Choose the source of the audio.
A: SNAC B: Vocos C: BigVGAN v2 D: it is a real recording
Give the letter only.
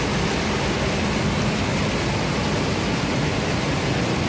D